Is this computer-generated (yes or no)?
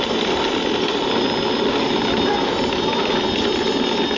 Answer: no